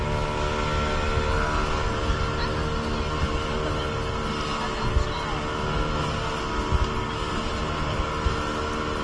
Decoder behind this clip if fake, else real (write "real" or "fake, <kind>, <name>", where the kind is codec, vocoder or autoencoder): real